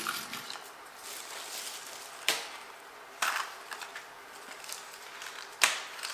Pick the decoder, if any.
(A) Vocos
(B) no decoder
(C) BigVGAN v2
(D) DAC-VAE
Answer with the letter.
C